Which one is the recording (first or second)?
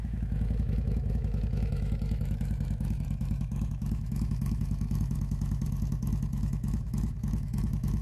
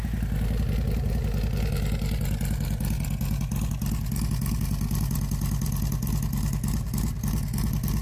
second